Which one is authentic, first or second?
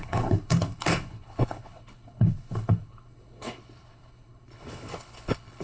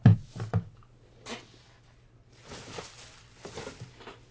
second